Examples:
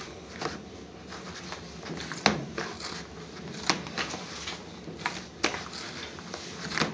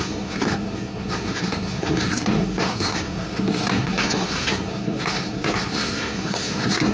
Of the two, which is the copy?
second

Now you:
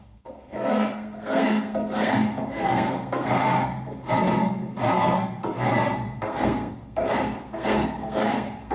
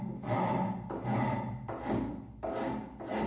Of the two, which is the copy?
first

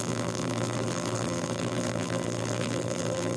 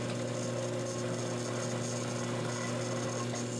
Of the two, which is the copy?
first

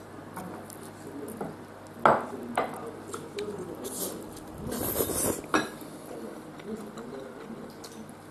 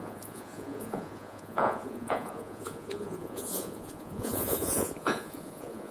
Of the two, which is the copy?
second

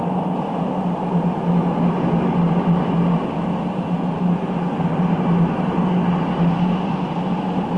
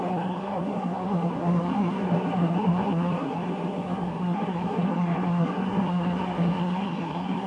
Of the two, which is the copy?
second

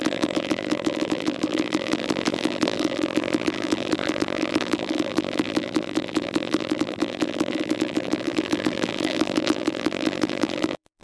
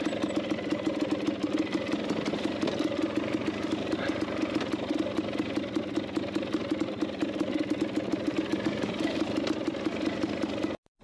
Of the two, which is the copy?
first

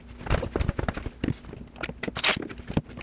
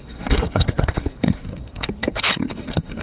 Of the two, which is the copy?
second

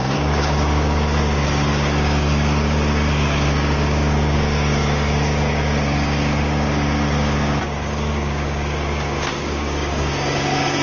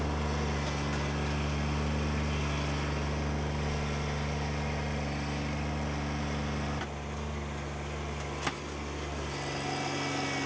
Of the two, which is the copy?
first